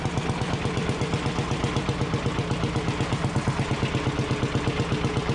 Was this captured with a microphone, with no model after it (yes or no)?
yes